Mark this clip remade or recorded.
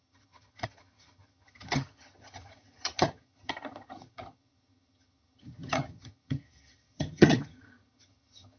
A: remade